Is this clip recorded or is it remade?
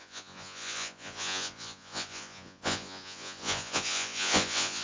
remade